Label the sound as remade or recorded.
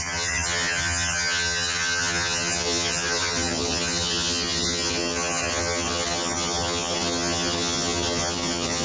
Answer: remade